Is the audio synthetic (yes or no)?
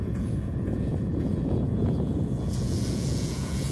yes